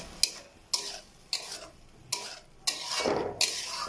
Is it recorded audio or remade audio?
recorded